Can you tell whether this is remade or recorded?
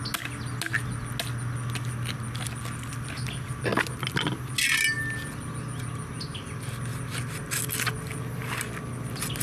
recorded